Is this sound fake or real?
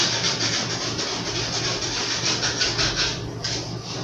real